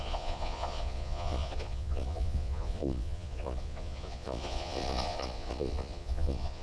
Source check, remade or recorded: remade